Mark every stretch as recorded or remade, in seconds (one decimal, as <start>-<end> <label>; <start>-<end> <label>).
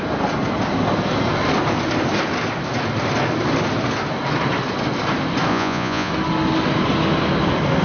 0.0-5.5 recorded; 5.5-6.1 remade; 6.1-7.8 recorded